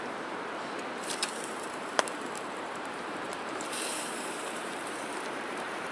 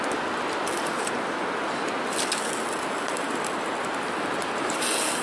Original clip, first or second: second